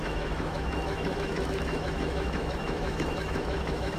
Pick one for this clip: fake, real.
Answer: fake